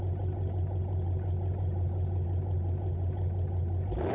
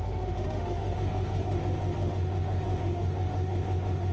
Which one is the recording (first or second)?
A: first